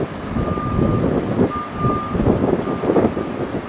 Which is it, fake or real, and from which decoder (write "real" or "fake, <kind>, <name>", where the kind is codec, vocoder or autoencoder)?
real